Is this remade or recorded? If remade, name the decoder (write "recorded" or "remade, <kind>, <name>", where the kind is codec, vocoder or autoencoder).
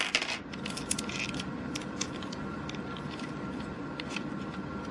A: recorded